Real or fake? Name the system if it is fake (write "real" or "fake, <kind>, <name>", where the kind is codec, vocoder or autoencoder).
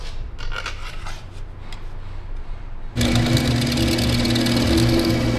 real